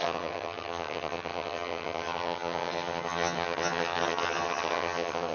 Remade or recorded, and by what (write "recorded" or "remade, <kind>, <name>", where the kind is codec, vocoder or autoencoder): remade, vocoder, HiFi-GAN